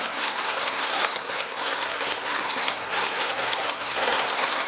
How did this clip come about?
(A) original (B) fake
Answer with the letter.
B